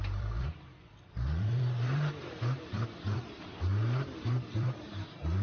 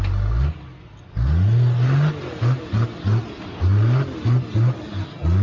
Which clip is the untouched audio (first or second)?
second